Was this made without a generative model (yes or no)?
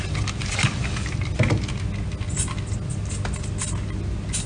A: yes